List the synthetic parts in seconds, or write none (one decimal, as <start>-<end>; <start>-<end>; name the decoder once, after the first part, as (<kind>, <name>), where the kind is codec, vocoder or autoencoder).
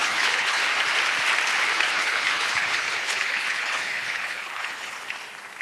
0.0-0.6 (codec, HILCodec); 1.7-5.1